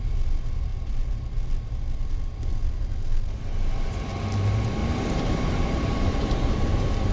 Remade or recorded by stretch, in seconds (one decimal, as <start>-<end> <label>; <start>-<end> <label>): 0.0-4.8 recorded; 4.8-7.1 remade